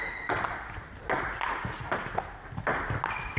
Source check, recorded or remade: recorded